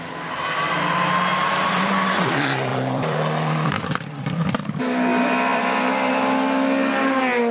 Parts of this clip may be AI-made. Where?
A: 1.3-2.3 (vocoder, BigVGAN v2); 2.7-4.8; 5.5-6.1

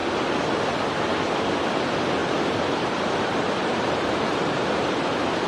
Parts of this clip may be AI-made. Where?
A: 2.2-3.1 (vocoder, BigVGAN v2); 3.6-5.1

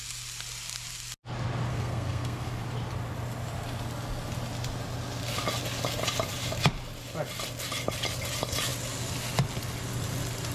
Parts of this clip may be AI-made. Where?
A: 1.7-2.6 (codec, SNAC)

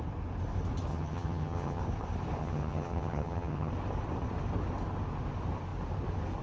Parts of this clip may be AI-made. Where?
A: 0.9-1.8 (vocoder, HiFi-GAN); 2.4-3.7

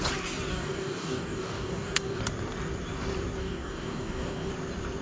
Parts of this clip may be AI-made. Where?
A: 0.5-2.2 (codec, DAC); 3.4-4.5

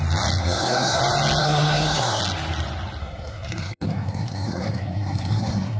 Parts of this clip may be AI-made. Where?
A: 0.4-1.0 (codec, SNAC); 1.4-2.2; 3.0-5.8